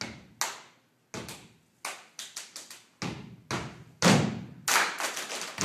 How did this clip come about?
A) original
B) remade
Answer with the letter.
A